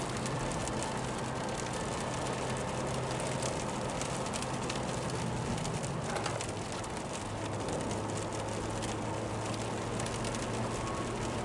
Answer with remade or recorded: recorded